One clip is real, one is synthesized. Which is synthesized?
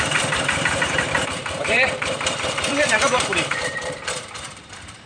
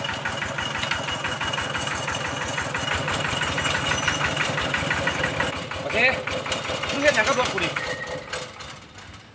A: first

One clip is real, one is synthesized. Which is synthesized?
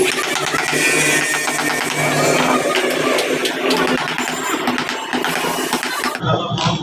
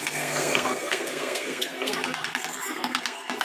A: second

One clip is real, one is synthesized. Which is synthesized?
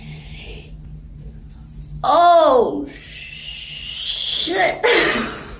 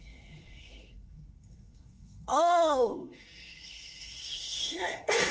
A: second